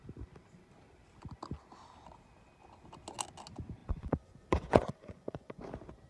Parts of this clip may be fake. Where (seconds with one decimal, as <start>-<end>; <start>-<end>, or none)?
3.8-5.6